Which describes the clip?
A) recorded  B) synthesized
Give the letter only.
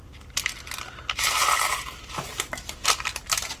A